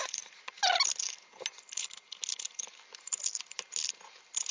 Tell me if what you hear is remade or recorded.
recorded